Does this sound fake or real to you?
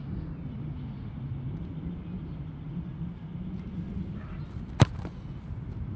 real